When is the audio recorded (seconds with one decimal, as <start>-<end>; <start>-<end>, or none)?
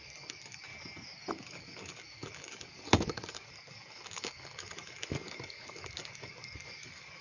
0.7-1.3